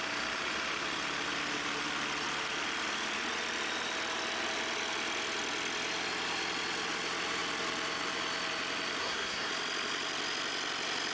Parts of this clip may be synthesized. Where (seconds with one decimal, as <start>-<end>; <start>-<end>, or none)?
9.0-9.5